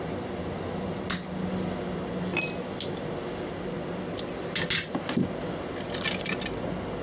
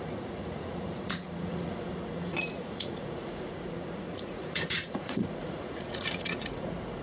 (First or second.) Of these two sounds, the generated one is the second